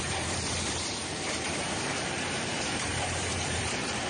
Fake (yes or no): yes